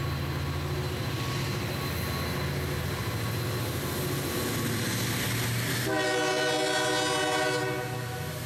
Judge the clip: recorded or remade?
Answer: recorded